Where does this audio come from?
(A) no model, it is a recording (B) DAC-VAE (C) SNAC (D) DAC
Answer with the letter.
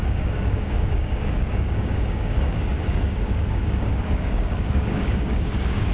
D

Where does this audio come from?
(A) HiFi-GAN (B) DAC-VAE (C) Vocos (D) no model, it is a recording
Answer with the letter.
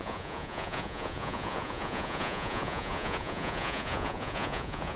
C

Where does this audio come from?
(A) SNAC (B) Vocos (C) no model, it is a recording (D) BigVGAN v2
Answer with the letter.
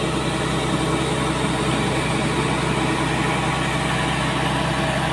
C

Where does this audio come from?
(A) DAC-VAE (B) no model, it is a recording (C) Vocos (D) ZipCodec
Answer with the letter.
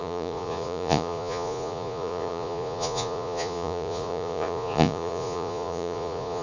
C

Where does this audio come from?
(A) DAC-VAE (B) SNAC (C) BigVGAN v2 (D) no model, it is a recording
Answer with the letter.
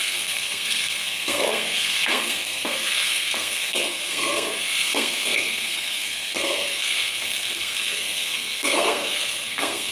B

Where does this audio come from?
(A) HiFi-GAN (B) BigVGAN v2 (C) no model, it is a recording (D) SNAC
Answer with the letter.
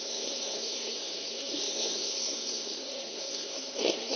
D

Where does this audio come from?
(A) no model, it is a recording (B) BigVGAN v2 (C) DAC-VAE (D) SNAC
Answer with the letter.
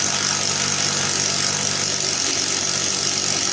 A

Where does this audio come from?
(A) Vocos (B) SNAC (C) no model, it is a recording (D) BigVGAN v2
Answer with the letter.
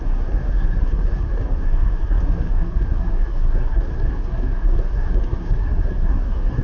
B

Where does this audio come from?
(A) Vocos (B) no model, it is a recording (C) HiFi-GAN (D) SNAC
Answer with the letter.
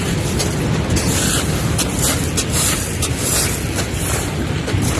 B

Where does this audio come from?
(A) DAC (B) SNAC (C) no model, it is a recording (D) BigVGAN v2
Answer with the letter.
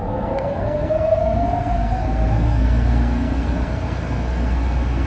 B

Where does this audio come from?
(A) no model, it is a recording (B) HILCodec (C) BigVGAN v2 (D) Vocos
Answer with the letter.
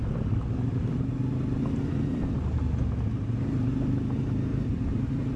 A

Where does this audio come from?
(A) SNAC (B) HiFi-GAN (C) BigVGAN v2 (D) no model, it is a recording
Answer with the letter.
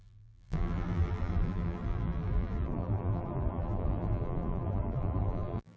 C